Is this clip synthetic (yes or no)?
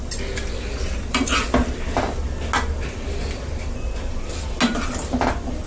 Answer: no